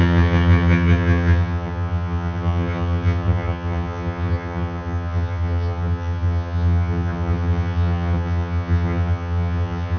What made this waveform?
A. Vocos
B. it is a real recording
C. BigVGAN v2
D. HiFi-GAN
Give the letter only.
D